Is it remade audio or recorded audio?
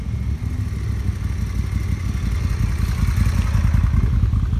recorded